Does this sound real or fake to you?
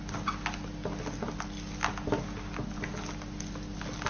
real